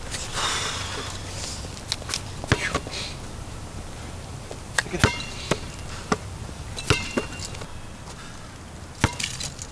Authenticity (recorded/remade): recorded